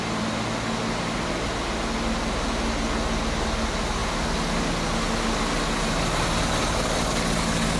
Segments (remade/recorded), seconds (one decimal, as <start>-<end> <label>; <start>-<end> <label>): 0.0-7.8 recorded